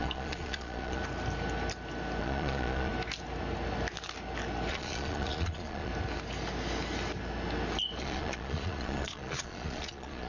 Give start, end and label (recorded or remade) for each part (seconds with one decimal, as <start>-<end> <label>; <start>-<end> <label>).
0.0-1.0 remade; 1.0-2.2 recorded; 2.2-2.9 remade; 2.9-4.7 recorded; 4.7-5.9 remade; 5.9-8.0 recorded; 8.0-10.3 remade